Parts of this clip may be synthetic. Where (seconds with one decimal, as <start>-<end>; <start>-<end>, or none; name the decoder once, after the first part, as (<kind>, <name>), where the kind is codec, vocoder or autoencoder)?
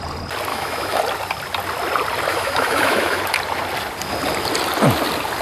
0.5-1.0 (autoencoder, DAC-VAE); 2.3-3.2